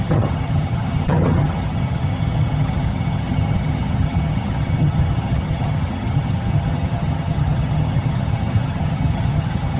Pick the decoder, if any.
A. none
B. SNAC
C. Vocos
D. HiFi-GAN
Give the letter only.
D